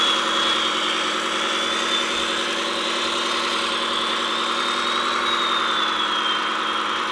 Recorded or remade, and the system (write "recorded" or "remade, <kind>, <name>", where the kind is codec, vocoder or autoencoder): remade, vocoder, BigVGAN v2